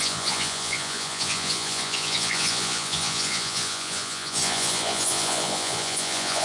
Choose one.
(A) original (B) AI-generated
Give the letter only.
B